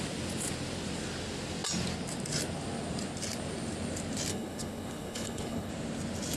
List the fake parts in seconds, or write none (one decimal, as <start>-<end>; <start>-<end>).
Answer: 4.3-5.7